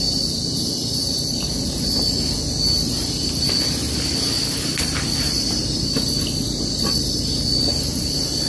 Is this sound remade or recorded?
recorded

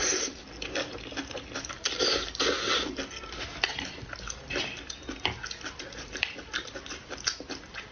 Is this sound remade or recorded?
recorded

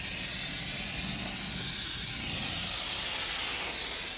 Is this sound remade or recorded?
recorded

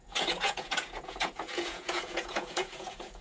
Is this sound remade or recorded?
remade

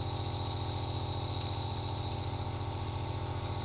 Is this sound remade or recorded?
recorded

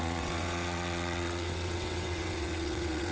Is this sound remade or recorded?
remade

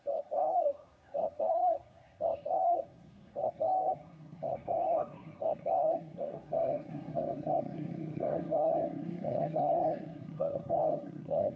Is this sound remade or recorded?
remade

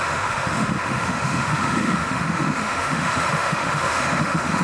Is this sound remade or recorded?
remade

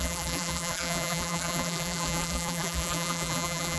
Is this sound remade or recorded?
remade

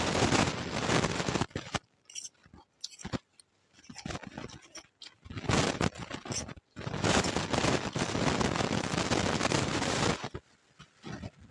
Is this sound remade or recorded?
recorded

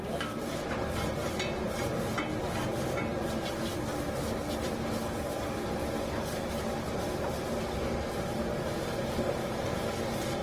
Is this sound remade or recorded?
recorded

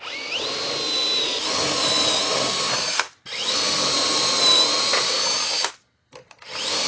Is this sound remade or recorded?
recorded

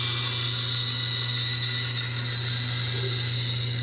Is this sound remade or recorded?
recorded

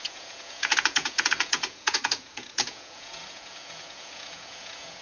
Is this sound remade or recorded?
remade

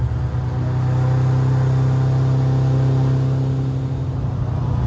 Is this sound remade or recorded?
recorded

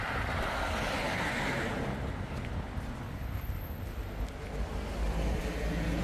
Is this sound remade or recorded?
recorded